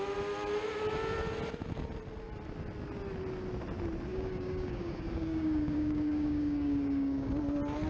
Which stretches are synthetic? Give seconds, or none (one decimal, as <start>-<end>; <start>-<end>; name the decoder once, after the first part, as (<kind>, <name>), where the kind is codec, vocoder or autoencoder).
4.1-7.3 (codec, DAC)